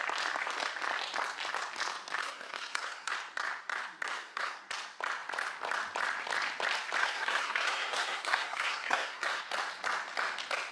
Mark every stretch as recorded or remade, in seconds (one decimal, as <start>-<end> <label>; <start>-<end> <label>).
0.0-2.2 recorded; 2.2-3.1 remade; 3.1-4.1 recorded; 4.1-4.6 remade; 4.6-7.0 recorded; 7.0-9.4 remade; 9.4-10.7 recorded